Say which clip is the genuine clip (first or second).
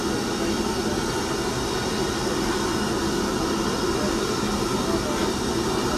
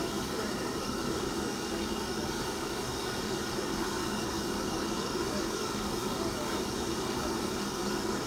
first